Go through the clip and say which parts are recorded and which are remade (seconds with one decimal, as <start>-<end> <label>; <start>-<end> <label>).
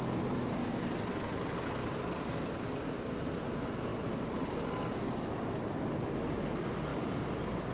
0.0-1.8 recorded; 1.8-3.2 remade; 3.2-3.9 recorded; 3.9-4.5 remade; 4.5-7.7 recorded